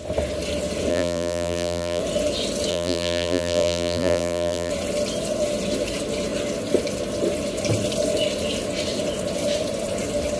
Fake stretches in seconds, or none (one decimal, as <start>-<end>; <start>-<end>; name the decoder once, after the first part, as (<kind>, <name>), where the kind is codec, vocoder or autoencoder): 0.9-2.0 (vocoder, BigVGAN v2); 2.7-4.7